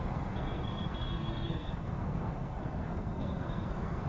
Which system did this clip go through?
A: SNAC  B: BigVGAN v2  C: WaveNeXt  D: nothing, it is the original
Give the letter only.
A